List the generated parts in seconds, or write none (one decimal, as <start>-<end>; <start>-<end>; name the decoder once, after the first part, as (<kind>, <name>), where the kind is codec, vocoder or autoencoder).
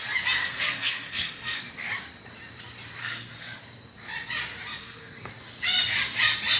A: 0.4-1.7 (codec, SNAC); 3.0-3.6; 4.8-5.3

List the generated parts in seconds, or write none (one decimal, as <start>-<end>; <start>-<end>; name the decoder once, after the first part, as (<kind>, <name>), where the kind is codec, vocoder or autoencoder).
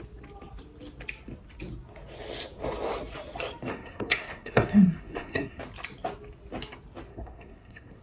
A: 3.7-5.6 (codec, SNAC); 7.1-8.0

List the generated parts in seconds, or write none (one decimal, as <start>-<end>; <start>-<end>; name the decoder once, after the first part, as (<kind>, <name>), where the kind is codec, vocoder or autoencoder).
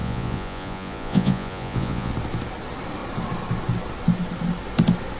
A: 0.0-2.1 (vocoder, Vocos)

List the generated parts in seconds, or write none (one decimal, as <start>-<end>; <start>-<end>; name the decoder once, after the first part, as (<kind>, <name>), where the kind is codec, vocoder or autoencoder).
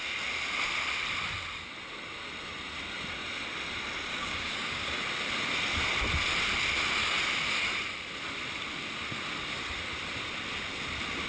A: 4.1-5.0 (codec, DAC)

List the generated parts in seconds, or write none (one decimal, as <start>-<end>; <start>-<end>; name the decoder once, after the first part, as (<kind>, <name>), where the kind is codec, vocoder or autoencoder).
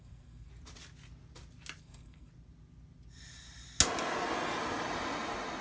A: 0.0-0.5 (codec, SNAC); 1.8-2.3